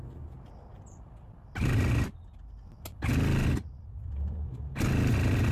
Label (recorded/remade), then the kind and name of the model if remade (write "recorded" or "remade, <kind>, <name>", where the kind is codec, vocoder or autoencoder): recorded